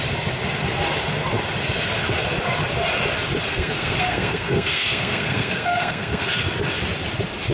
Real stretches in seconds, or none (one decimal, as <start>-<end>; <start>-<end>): 0.0-3.5; 6.3-7.5